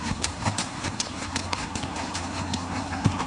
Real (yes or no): no